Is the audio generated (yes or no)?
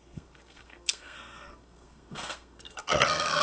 yes